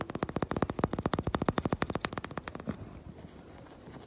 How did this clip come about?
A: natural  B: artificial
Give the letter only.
A